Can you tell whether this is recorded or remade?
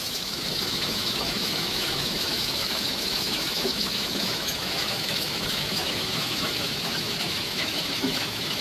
remade